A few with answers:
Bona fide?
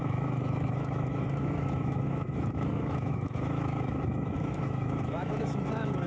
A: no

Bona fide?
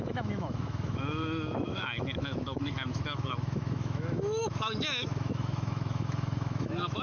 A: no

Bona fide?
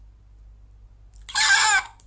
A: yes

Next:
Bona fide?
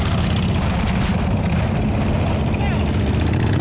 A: yes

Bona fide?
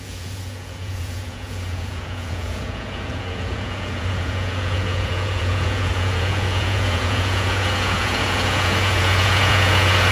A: no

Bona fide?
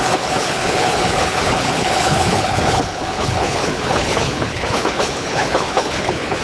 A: no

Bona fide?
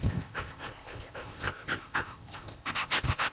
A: no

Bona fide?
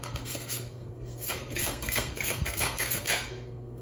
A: no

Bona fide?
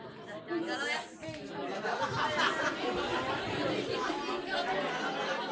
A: yes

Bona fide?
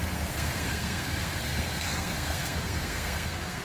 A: no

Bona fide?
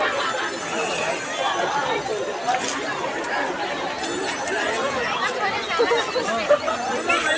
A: yes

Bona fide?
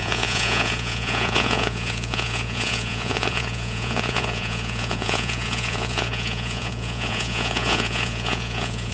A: no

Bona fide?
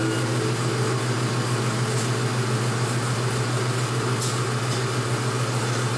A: yes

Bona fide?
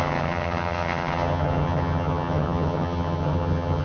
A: no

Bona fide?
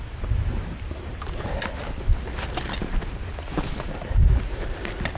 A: yes